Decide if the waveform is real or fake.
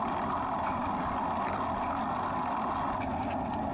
real